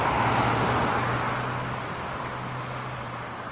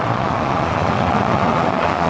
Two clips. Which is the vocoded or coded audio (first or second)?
second